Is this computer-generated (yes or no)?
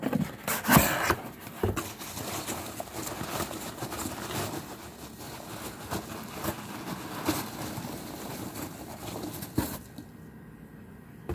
no